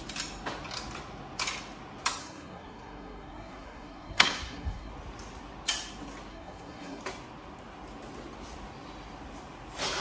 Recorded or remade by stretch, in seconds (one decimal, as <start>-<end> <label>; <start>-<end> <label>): 0.0-2.2 recorded; 2.2-4.9 remade; 4.9-6.3 recorded; 6.3-7.0 remade; 7.0-10.0 recorded